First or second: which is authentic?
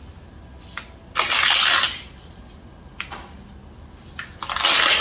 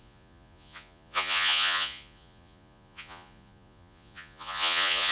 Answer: first